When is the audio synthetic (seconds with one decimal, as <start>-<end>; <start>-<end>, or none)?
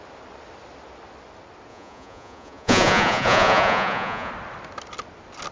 1.7-4.3